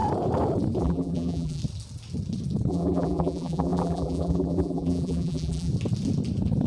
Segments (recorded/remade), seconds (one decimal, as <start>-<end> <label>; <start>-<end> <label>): 0.0-0.8 recorded; 0.8-1.6 remade; 1.6-2.7 recorded; 2.7-5.7 remade; 5.7-6.7 recorded